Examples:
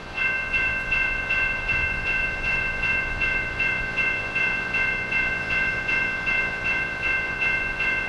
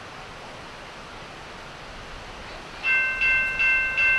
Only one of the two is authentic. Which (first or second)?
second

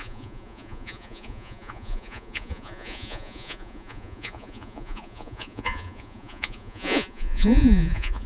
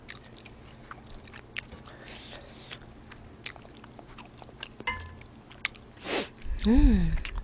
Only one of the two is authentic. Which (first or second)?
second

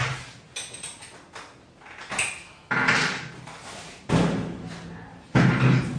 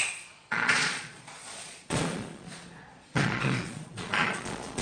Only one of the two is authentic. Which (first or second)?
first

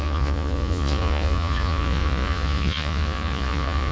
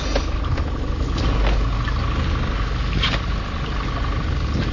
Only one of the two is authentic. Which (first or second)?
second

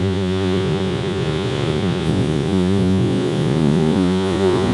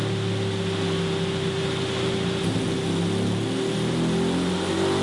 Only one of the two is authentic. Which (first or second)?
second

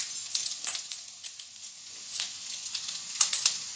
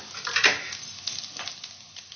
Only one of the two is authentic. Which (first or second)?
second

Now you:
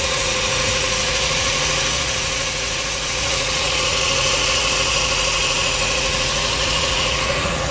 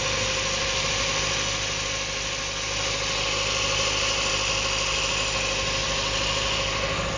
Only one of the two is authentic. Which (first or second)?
second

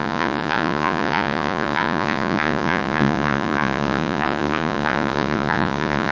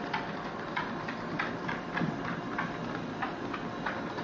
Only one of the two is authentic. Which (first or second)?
second